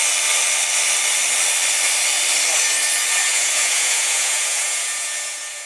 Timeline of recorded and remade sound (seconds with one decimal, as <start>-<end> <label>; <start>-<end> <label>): 0.0-3.2 recorded; 3.2-5.7 remade